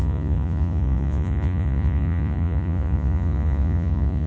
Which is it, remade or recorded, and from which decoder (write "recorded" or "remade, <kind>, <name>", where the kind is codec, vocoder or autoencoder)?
remade, vocoder, Vocos